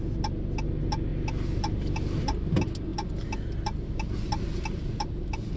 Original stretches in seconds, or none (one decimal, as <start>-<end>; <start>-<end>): 0.0-5.6